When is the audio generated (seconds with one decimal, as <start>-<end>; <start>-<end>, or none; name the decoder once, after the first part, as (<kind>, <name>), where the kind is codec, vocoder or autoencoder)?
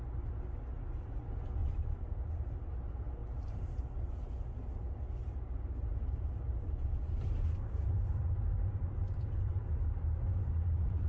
1.6-2.2 (vocoder, BigVGAN v2); 3.2-3.7; 5.9-9.6